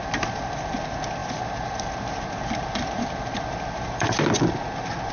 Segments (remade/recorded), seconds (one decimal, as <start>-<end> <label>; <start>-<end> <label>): 0.0-5.1 recorded